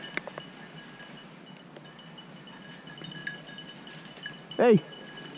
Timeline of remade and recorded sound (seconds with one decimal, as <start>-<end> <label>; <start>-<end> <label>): 0.0-5.4 recorded